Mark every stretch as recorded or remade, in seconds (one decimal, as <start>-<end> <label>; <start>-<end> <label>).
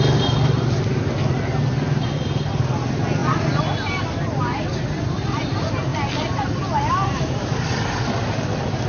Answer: 0.0-8.9 recorded